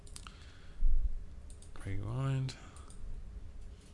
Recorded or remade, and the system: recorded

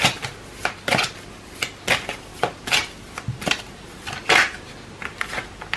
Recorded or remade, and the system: recorded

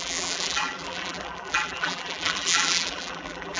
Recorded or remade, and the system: remade, vocoder, BigVGAN v2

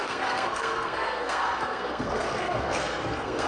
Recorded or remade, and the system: remade, codec, SNAC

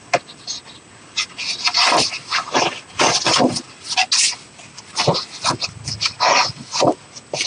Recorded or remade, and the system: recorded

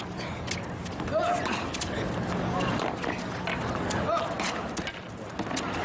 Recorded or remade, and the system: recorded